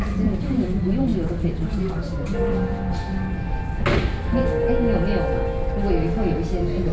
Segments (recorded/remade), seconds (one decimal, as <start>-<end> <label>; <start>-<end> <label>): 0.0-6.9 recorded